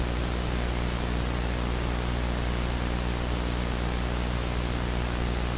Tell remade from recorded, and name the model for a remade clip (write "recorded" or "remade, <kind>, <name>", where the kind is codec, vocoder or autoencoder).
recorded